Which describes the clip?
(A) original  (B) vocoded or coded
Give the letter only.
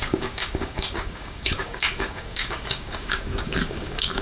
B